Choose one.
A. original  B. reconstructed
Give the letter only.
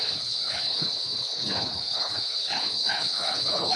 B